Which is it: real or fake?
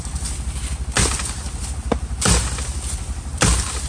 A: real